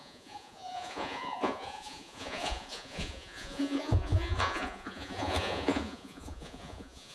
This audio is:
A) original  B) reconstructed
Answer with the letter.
B